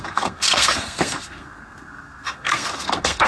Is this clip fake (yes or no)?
yes